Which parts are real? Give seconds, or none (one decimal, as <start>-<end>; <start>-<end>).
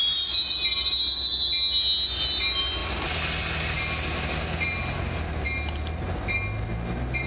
0.0-7.3